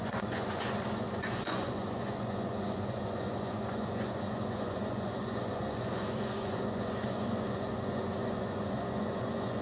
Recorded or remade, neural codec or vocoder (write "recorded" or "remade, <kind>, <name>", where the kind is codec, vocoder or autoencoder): remade, vocoder, Vocos